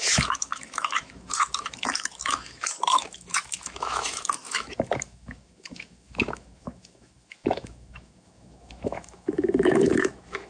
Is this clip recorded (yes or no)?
no